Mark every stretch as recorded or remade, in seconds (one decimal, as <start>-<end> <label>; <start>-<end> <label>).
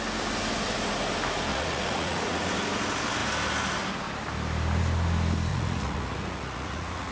0.0-1.5 recorded; 1.5-2.4 remade; 2.4-5.5 recorded; 5.5-7.1 remade